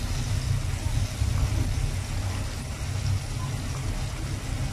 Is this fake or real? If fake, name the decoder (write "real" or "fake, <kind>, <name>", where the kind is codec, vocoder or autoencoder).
real